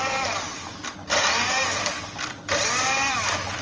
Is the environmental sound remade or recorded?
remade